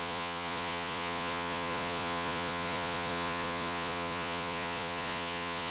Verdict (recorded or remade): remade